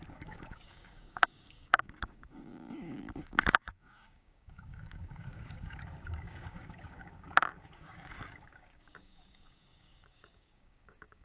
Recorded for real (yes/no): no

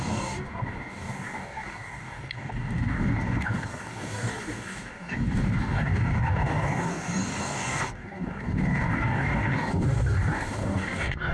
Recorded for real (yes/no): no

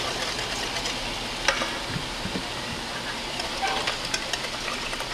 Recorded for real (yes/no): yes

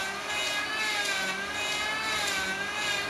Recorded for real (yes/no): yes